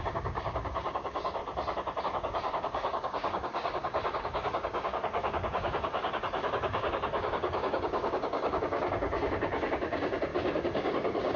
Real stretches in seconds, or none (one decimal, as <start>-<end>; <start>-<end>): 1.4-2.0